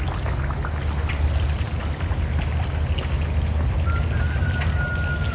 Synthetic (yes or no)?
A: no